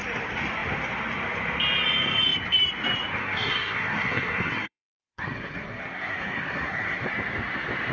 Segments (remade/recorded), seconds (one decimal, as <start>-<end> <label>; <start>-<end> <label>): 0.0-3.2 recorded; 3.2-7.1 remade; 7.1-7.9 recorded

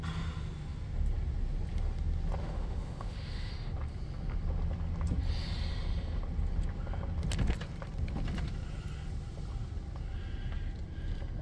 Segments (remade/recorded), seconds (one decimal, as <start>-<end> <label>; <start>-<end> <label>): 0.0-2.4 recorded; 2.4-3.5 remade; 3.5-11.4 recorded